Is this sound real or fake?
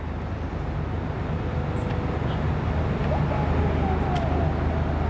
real